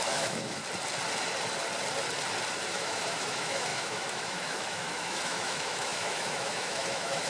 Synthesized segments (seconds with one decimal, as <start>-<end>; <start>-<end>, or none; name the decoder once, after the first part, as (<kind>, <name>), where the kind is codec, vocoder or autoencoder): 0.0-0.6 (autoencoder, DAC-VAE); 2.7-7.3